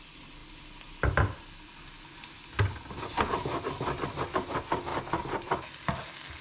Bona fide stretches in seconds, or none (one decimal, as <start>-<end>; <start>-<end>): 0.0-6.4